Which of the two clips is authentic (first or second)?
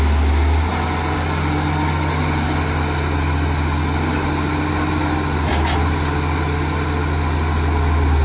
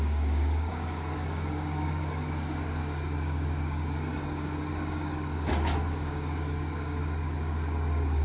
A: first